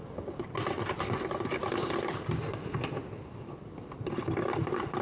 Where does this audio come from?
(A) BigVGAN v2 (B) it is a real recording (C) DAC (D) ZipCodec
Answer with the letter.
B